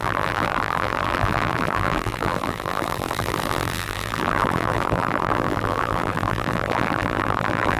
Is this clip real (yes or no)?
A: no